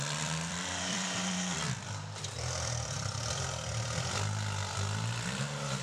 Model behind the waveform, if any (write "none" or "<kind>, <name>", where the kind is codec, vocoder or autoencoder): vocoder, BigVGAN v2